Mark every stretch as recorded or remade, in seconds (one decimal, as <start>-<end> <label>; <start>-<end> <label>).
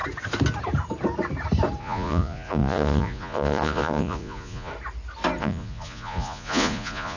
0.0-1.8 recorded; 1.8-4.7 remade; 4.7-5.4 recorded; 5.4-7.2 remade